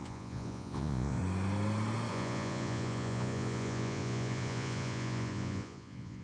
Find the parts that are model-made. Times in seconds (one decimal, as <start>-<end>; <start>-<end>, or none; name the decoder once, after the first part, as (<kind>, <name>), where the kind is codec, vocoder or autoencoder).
0.0-1.2 (vocoder, Vocos); 2.1-6.2